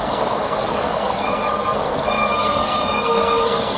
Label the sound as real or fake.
fake